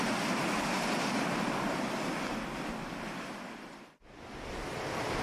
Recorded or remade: recorded